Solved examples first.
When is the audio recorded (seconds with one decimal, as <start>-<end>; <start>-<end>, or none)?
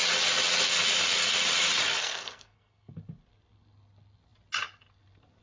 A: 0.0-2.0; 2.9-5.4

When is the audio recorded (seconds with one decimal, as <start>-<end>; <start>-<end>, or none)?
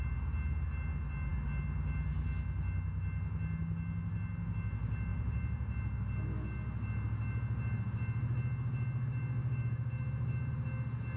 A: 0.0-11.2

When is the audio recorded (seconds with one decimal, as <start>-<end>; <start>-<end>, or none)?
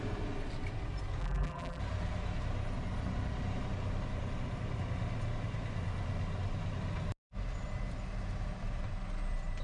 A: 0.0-1.2; 1.8-9.6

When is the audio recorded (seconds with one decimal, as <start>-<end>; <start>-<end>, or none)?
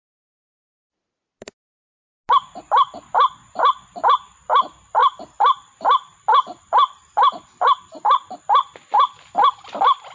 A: 0.0-10.1